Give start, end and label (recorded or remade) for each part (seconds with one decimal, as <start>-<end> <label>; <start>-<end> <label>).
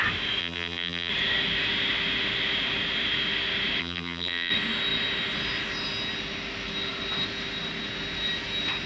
0.0-0.4 recorded; 0.4-1.1 remade; 1.1-3.8 recorded; 3.8-4.5 remade; 4.5-8.9 recorded